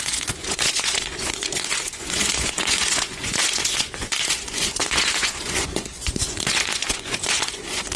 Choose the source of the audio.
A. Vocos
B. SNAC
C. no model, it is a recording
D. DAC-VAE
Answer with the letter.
A